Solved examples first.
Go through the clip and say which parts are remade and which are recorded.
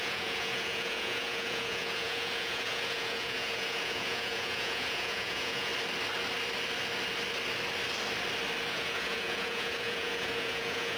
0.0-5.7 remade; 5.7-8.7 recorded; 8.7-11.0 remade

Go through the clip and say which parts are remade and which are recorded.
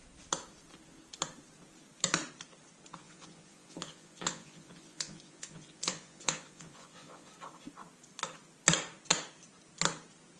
0.0-3.0 recorded; 3.0-7.3 remade; 7.3-10.4 recorded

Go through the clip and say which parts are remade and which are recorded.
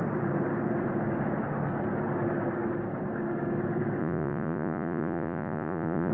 0.0-4.0 recorded; 4.0-6.1 remade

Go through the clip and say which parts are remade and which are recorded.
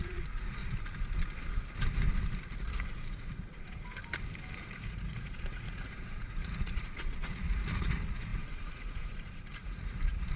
0.0-0.6 remade; 0.6-2.7 recorded; 2.7-4.0 remade; 4.0-4.6 recorded; 4.6-10.4 remade